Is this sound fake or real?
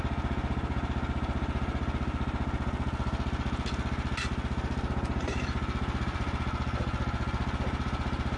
real